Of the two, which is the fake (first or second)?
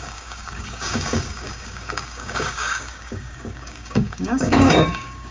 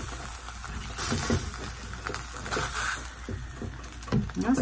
first